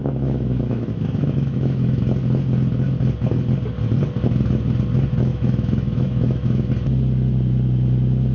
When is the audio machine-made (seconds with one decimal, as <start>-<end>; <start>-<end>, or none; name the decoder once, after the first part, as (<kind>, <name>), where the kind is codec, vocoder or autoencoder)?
0.0-2.0 (autoencoder, DAC-VAE); 5.3-6.7

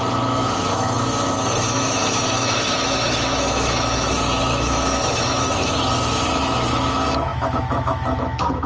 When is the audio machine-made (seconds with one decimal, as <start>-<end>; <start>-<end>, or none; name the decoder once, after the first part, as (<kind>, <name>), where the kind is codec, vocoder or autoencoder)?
0.0-8.7 (autoencoder, DAC-VAE)